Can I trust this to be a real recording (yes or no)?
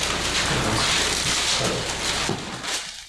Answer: yes